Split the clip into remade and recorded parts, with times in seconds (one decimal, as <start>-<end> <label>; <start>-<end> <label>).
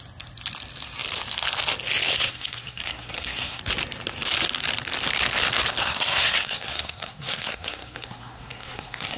0.0-2.1 recorded; 2.1-3.6 remade; 3.6-5.8 recorded; 5.8-9.2 remade